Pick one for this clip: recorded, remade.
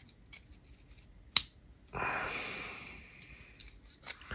recorded